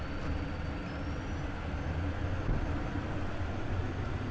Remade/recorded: recorded